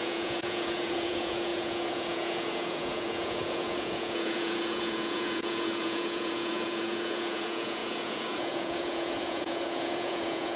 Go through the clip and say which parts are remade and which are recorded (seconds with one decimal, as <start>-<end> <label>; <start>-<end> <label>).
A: 0.0-10.6 remade